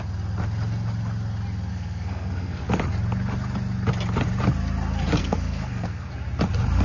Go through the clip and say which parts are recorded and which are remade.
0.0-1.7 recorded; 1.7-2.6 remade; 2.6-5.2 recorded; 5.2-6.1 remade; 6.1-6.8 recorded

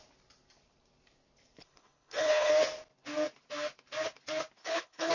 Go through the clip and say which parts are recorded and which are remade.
0.0-1.6 recorded; 1.6-2.5 remade; 2.5-4.6 recorded; 4.6-5.1 remade

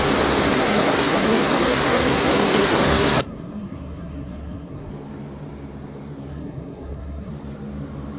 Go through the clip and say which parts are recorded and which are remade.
0.0-0.5 recorded; 0.5-4.9 remade; 4.9-6.3 recorded; 6.3-7.3 remade; 7.3-8.2 recorded

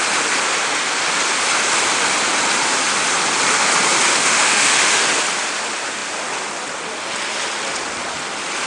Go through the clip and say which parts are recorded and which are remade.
0.0-4.1 recorded; 4.1-5.0 remade; 5.0-8.7 recorded

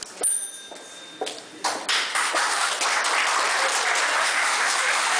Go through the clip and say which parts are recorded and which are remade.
0.0-2.1 recorded; 2.1-2.7 remade; 2.7-4.2 recorded; 4.2-5.2 remade